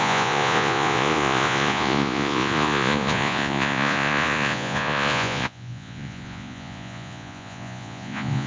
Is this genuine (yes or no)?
no